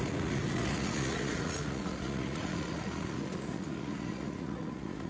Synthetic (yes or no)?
yes